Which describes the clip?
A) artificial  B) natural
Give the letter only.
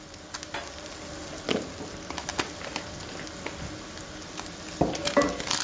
B